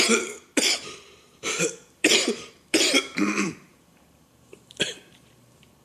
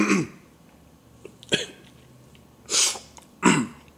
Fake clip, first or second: first